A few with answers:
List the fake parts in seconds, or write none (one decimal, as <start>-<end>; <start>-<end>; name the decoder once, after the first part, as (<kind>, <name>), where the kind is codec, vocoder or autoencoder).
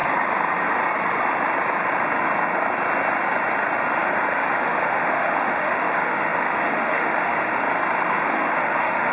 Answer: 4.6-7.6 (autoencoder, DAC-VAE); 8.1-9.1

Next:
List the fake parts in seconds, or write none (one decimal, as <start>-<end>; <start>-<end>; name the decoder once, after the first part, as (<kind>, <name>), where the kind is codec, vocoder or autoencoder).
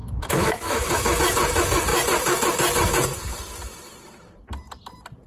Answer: 0.0-1.2 (autoencoder, DAC-VAE)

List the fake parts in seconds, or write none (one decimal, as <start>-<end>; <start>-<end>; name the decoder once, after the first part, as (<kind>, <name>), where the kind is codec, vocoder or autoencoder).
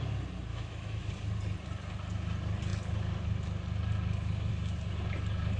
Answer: 0.5-1.1 (autoencoder, DAC-VAE)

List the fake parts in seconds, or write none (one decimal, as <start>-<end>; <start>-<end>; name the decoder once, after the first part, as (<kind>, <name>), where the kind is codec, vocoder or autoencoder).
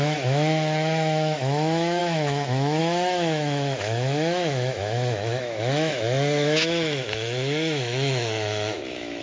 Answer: 0.0-9.2 (autoencoder, DAC-VAE)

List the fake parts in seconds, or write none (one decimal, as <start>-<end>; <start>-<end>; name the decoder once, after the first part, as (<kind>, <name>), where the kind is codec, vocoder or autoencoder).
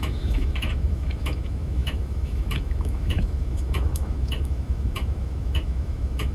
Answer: 0.0-6.3 (autoencoder, DAC-VAE)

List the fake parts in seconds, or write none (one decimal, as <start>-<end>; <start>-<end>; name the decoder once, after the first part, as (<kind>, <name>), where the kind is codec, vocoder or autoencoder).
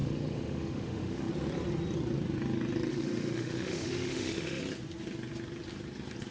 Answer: 0.0-1.3 (autoencoder, DAC-VAE); 2.9-4.6